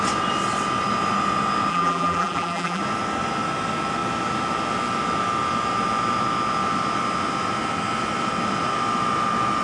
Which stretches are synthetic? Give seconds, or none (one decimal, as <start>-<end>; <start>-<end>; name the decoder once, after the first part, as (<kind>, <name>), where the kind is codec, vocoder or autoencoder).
1.7-2.8 (vocoder, BigVGAN v2)